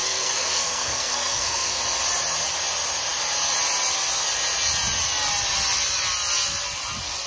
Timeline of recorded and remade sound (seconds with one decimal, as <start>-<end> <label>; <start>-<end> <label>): 0.0-1.8 remade; 1.8-7.3 recorded